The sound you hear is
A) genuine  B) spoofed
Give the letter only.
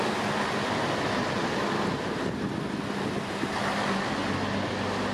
A